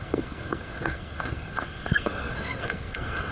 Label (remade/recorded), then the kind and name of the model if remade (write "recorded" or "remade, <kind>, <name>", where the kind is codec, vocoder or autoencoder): remade, codec, SNAC